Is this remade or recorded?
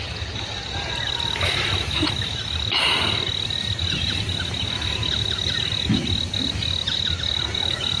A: recorded